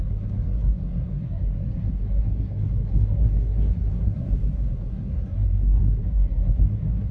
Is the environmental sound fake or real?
fake